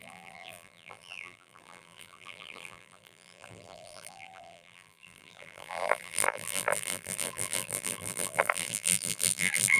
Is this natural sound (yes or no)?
no